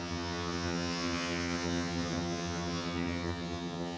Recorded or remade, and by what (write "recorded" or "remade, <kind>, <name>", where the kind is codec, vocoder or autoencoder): remade, vocoder, HiFi-GAN